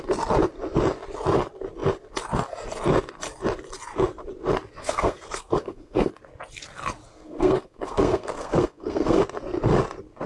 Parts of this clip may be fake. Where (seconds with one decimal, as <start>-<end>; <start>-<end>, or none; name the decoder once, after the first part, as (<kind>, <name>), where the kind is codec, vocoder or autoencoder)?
4.8-6.1 (codec, SNAC); 7.1-9.2